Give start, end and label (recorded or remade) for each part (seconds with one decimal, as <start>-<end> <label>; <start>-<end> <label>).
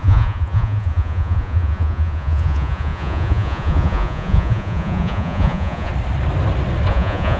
0.0-5.9 remade; 5.9-6.9 recorded; 6.9-7.4 remade